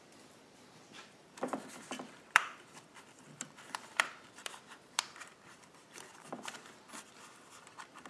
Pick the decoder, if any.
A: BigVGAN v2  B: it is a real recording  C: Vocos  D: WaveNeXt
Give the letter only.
A